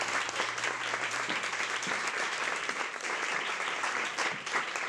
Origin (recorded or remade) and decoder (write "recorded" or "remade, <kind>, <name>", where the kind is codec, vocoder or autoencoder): remade, vocoder, BigVGAN v2